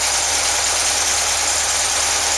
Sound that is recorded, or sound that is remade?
recorded